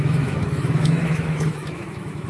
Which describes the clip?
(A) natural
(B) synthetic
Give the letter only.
B